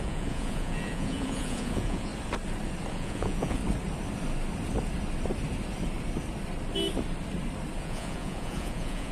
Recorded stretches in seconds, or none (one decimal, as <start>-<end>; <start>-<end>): 2.1-2.9; 3.6-7.8